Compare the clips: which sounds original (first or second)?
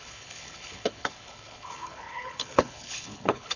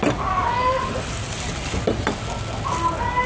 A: second